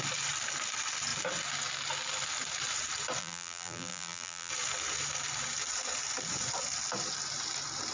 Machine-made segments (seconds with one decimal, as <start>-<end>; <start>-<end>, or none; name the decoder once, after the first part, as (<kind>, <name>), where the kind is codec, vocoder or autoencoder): 3.2-4.5 (vocoder, BigVGAN v2)